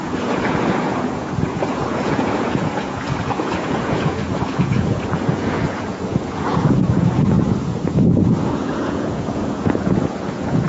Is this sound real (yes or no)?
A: no